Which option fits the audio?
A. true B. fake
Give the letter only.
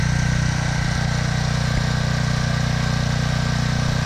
A